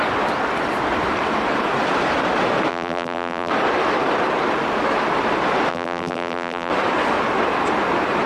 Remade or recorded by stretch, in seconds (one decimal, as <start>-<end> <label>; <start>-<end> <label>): 0.0-2.7 recorded; 2.7-3.5 remade; 3.5-5.7 recorded; 5.7-6.7 remade; 6.7-8.3 recorded